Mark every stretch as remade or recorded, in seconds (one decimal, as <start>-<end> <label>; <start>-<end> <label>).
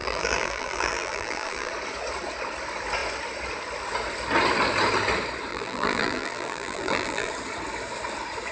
0.0-1.7 remade; 1.7-5.5 recorded; 5.5-7.3 remade; 7.3-8.5 recorded